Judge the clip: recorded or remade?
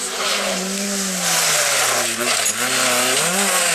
recorded